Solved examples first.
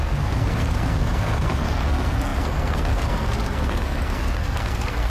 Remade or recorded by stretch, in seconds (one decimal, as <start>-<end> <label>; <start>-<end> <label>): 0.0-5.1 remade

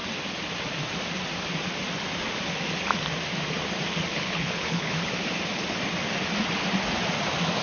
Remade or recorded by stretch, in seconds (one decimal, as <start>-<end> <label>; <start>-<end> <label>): 0.0-4.1 recorded; 4.1-5.1 remade; 5.1-7.6 recorded

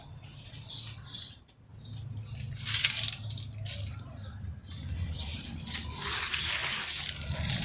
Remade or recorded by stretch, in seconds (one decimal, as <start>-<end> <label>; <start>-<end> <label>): 0.0-7.6 recorded